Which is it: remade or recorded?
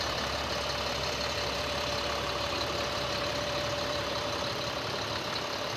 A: remade